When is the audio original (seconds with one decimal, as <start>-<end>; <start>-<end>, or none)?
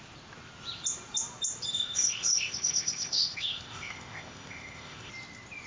0.0-1.7; 5.1-5.7